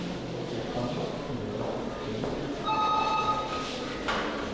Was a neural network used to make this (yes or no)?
no